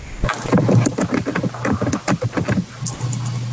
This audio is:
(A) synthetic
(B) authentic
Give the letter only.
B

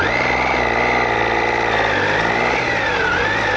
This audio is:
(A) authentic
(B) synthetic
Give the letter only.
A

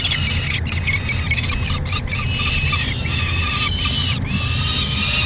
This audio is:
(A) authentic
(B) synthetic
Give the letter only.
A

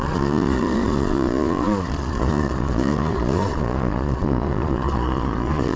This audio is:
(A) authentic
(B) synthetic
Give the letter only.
B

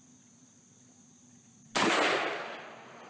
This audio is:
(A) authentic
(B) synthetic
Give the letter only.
A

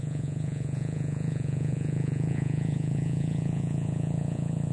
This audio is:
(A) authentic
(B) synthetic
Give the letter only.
B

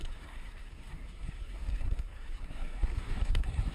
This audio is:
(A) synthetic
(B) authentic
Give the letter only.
A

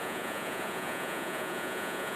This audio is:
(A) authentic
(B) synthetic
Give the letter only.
B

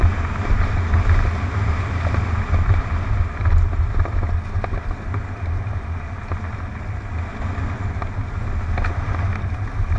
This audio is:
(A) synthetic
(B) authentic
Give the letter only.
B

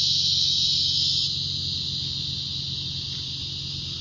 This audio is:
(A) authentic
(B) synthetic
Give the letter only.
A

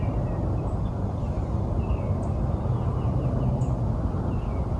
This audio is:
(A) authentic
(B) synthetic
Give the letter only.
A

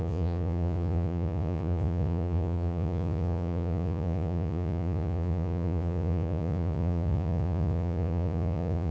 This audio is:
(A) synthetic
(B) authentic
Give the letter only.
A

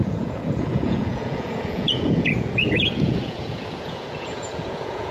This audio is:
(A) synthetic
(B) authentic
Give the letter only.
A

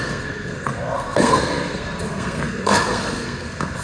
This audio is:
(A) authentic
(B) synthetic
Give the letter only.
B